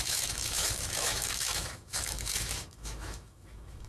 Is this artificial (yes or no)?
yes